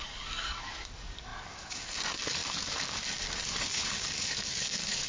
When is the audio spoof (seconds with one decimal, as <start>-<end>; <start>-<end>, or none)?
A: 0.0-5.1